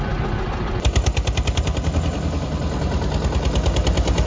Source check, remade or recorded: recorded